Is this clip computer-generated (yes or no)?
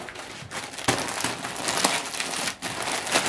no